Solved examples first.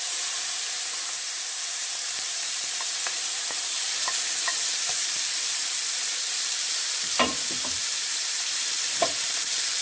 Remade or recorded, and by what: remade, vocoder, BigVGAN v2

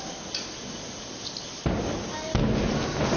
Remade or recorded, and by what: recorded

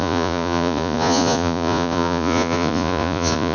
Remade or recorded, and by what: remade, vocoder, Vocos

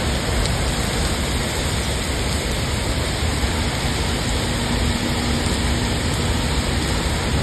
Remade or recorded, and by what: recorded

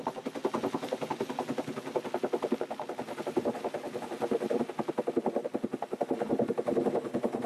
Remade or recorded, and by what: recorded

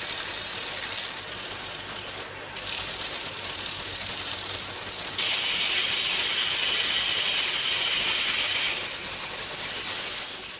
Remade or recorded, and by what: recorded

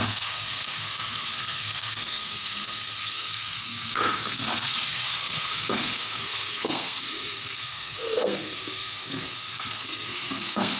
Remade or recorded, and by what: remade, codec, SNAC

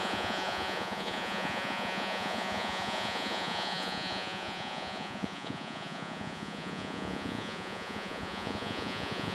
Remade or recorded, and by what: remade, vocoder, Vocos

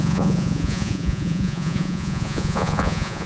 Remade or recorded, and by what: remade, vocoder, Vocos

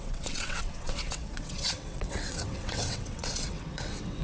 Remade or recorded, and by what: remade, vocoder, WaveNeXt